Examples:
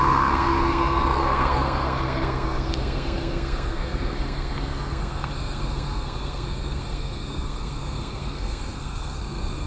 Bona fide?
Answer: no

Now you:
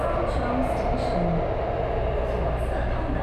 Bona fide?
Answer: yes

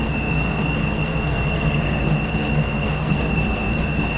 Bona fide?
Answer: no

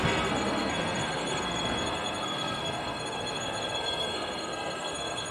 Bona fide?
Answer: no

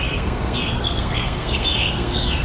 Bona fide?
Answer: no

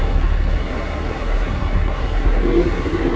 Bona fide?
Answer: no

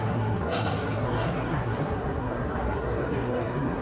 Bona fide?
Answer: no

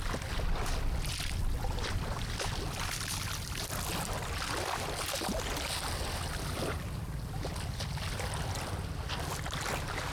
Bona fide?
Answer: yes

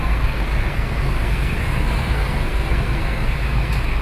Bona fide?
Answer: no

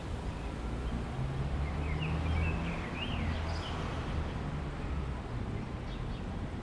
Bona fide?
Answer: yes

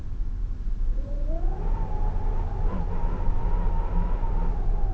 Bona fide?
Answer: yes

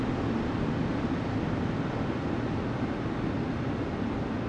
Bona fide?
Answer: yes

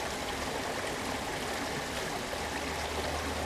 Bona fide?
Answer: yes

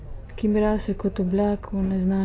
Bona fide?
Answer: yes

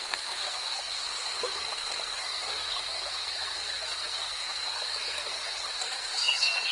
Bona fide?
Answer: no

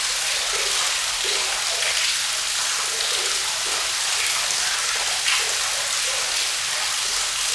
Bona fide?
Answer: yes